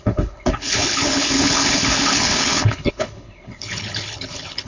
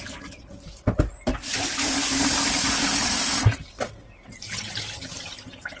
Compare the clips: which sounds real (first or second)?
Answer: second